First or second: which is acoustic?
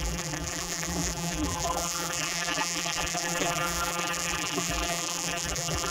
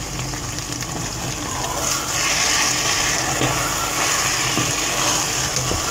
second